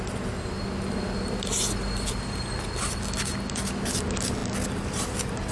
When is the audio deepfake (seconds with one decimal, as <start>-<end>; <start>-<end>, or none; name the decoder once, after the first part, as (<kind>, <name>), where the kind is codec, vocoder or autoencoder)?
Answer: none